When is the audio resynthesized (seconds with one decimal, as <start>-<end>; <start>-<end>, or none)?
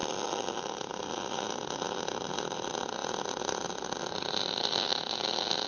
none